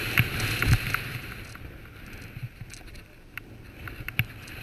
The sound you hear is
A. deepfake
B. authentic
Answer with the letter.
B